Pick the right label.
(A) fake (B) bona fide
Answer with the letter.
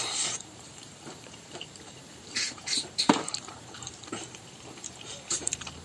A